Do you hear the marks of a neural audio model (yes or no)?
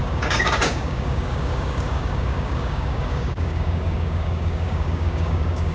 yes